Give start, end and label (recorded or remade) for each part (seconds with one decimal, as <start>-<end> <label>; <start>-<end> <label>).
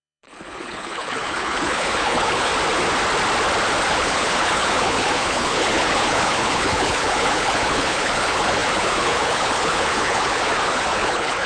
0.0-2.5 remade; 2.5-3.9 recorded; 3.9-11.5 remade